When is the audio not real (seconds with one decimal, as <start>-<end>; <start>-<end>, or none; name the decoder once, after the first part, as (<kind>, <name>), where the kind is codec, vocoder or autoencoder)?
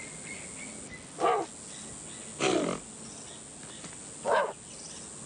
none